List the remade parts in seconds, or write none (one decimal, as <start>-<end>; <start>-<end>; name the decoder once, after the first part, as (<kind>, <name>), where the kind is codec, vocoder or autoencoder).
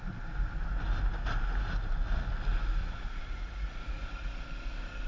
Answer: 2.8-4.3 (vocoder, Vocos)